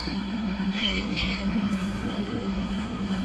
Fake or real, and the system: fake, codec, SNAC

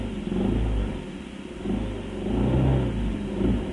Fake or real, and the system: real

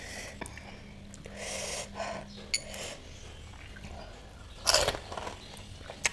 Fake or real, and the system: real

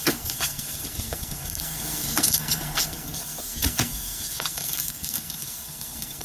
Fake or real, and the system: fake, codec, SNAC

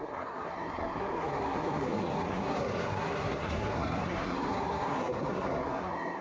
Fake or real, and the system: fake, codec, SNAC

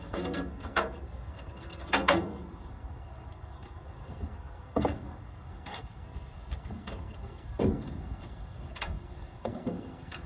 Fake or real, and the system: fake, codec, SNAC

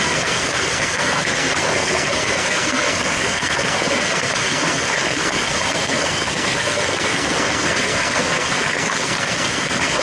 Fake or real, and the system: fake, codec, SNAC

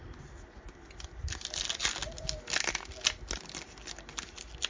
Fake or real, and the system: real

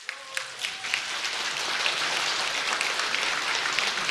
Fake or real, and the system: real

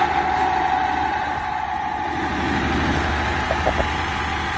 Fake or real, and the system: real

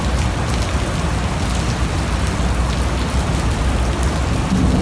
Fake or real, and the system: real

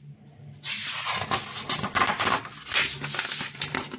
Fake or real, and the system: real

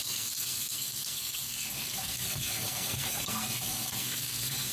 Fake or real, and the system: fake, codec, SNAC